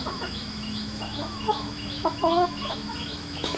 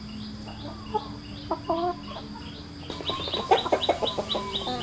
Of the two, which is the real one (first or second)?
second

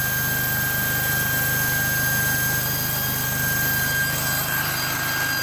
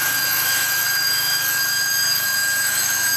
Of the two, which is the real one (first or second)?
first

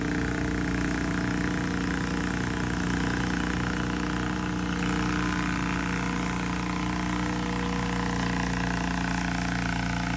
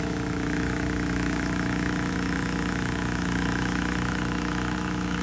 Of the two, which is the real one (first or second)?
first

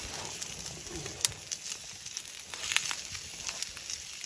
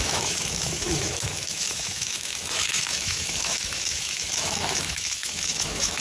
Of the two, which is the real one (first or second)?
first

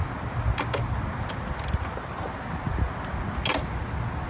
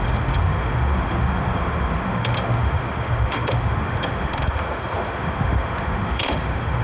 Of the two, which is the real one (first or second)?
first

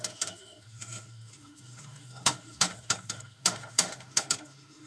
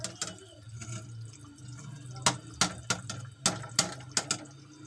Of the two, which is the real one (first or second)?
second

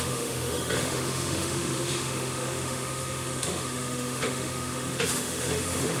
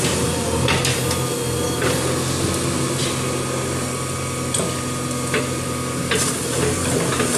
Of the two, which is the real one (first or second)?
second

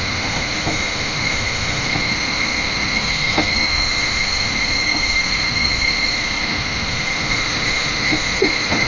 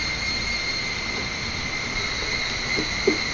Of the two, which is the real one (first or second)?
second